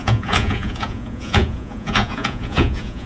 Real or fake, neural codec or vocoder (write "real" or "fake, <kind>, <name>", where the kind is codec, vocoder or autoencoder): fake, vocoder, Vocos